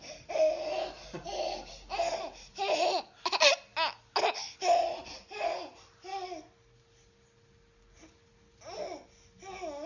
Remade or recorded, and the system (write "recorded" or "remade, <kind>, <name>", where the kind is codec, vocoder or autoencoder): recorded